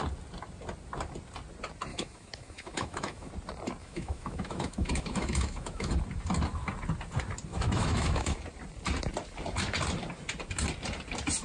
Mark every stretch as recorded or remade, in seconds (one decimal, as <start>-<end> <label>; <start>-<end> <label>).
0.0-1.9 recorded; 1.9-3.3 remade; 3.3-3.8 recorded; 3.8-6.0 remade; 6.0-7.5 recorded; 7.5-8.4 remade; 8.4-11.4 recorded